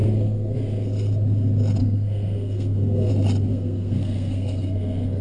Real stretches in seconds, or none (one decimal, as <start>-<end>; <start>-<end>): 0.6-1.8; 3.1-3.5